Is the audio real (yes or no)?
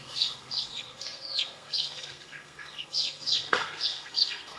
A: no